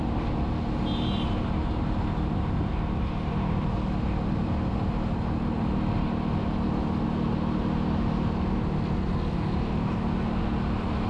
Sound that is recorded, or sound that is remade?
recorded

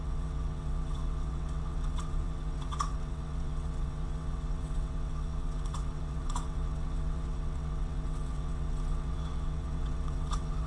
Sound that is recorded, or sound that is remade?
remade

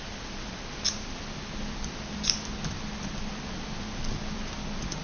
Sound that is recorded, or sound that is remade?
recorded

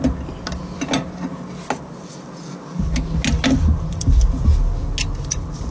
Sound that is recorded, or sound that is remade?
recorded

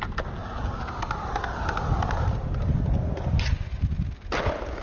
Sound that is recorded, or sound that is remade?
recorded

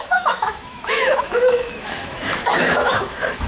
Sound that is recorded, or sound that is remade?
remade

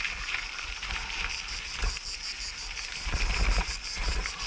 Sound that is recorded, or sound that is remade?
recorded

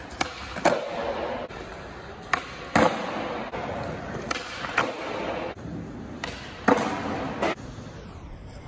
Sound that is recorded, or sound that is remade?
recorded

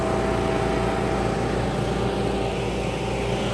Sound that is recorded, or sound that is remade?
recorded